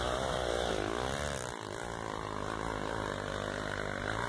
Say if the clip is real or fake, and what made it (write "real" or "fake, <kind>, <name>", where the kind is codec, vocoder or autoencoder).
real